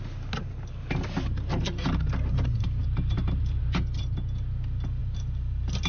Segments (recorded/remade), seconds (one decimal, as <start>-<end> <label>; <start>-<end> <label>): 0.0-2.8 recorded; 2.8-3.6 remade; 3.6-5.0 recorded; 5.0-5.9 remade